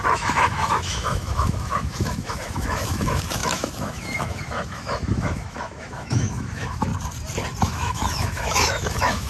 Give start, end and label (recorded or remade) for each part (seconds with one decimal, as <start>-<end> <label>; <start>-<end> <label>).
0.0-6.9 remade; 6.9-7.6 recorded; 7.6-9.3 remade